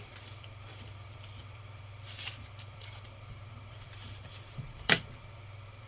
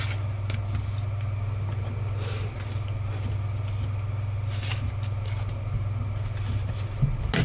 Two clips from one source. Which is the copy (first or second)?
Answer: first